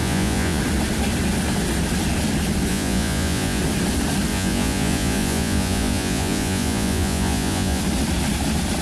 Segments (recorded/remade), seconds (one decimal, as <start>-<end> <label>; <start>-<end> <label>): 0.0-0.6 remade; 0.6-2.7 recorded; 2.7-3.6 remade; 3.6-4.3 recorded; 4.3-7.8 remade; 7.8-8.8 recorded